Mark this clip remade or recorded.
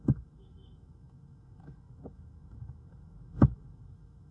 remade